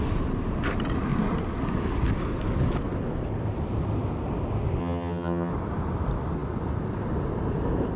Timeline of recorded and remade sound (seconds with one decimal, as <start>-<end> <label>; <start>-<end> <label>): 0.0-4.8 recorded; 4.8-5.5 remade; 5.5-8.0 recorded